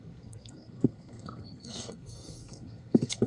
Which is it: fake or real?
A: fake